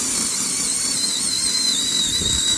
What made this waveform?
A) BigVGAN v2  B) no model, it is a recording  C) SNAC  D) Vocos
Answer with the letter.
B